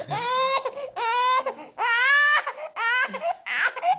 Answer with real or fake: fake